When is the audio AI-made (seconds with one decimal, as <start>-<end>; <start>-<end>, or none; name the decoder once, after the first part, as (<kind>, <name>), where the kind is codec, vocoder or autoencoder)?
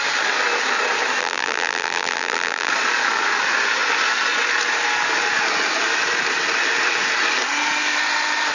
1.2-2.7 (vocoder, BigVGAN v2)